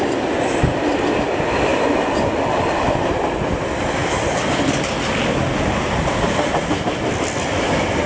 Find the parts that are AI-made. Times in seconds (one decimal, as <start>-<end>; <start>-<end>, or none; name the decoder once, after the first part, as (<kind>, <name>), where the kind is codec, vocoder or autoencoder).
none